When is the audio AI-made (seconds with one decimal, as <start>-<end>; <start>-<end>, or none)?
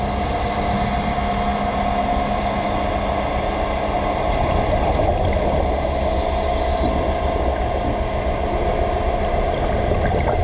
none